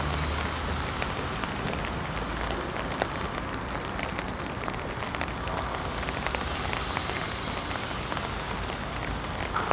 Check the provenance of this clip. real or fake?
real